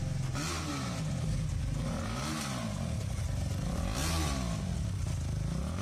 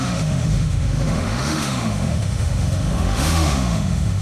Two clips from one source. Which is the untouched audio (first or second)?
first